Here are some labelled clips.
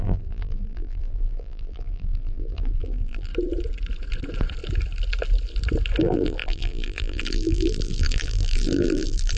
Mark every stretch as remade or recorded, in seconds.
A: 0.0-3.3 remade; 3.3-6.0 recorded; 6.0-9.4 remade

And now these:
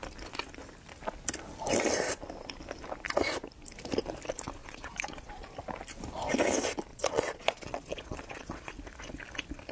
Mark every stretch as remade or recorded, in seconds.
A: 0.0-4.6 recorded; 4.6-5.4 remade; 5.4-6.9 recorded; 6.9-8.7 remade; 8.7-9.7 recorded